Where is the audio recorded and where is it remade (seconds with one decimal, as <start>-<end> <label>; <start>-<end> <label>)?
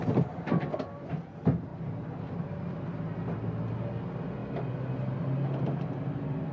0.0-1.7 recorded; 1.7-2.3 remade; 2.3-6.5 recorded